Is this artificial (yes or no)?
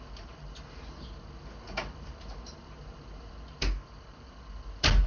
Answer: no